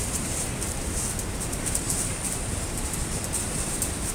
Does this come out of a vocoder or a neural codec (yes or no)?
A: yes